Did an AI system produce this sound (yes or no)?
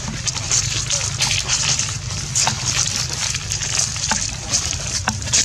yes